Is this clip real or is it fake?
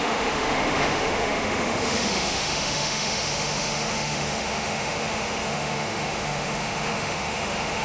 fake